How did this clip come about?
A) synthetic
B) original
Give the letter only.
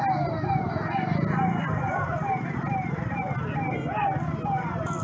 B